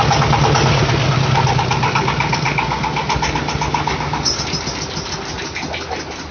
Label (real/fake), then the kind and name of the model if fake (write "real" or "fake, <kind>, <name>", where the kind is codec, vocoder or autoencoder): real